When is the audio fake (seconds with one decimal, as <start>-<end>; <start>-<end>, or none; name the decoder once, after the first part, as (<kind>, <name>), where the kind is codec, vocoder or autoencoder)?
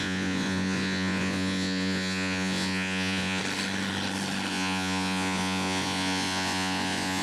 0.0-3.4 (vocoder, Vocos); 4.5-7.2